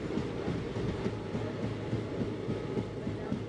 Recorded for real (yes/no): yes